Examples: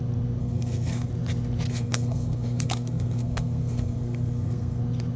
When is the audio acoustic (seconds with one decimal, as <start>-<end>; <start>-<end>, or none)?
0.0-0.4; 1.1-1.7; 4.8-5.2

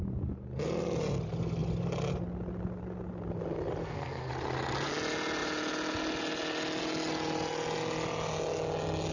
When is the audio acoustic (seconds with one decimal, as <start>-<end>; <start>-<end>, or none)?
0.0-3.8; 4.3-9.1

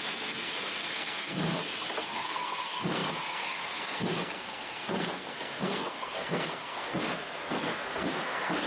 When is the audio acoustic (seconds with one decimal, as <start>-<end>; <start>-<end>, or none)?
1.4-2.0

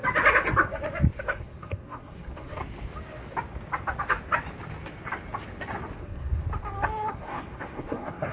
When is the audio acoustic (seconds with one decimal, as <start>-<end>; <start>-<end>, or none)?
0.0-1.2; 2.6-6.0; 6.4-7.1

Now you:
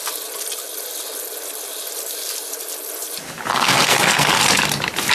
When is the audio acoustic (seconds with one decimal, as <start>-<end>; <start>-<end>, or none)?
0.0-3.5; 4.4-5.1

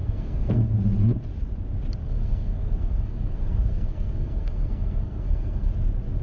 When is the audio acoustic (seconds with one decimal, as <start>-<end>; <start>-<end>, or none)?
0.8-2.0; 5.7-6.2